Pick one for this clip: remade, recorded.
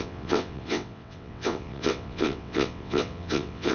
remade